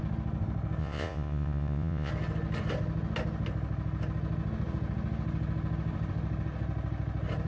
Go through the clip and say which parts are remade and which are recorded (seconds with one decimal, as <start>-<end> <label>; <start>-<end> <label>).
0.0-0.8 recorded; 0.8-2.1 remade; 2.1-7.5 recorded